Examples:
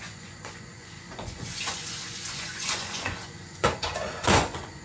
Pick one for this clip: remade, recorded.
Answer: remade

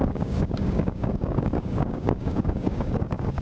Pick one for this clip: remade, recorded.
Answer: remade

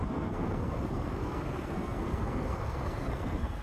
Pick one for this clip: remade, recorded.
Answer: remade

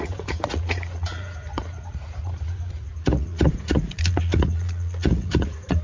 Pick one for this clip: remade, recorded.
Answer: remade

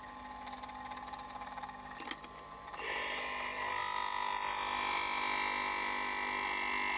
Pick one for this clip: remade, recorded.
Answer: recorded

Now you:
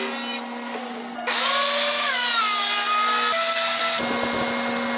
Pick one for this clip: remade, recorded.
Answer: recorded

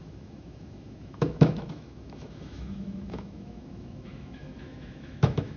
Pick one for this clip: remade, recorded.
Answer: remade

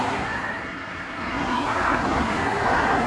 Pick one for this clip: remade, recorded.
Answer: remade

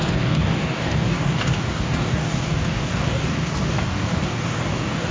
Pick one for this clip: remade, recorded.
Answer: remade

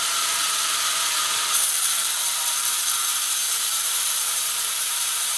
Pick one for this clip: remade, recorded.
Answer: remade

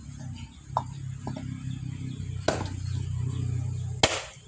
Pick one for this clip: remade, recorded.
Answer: recorded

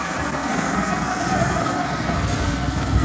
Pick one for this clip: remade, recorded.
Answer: remade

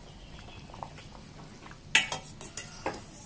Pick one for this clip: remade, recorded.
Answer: recorded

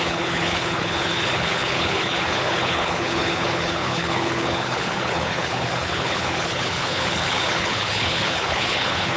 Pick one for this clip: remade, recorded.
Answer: remade